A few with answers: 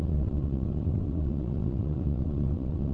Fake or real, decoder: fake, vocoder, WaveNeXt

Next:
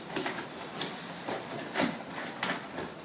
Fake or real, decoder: real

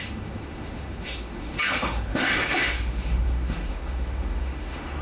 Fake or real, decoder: fake, autoencoder, DAC-VAE